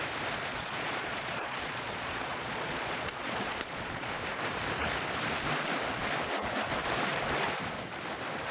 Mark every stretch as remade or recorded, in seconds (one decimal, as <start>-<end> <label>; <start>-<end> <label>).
0.0-0.5 recorded; 0.5-4.1 remade; 4.1-8.5 recorded